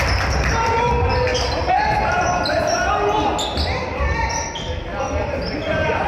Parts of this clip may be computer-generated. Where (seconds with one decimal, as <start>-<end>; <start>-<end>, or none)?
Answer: 1.3-2.0